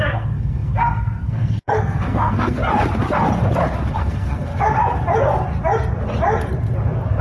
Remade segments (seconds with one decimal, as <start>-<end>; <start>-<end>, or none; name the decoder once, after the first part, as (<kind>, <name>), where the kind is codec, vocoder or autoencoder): 0.0-2.6 (codec, SNAC); 3.9-4.5